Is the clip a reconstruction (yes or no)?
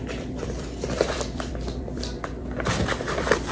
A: yes